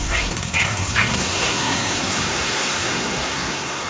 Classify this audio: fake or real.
fake